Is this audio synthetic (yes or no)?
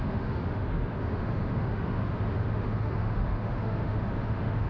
yes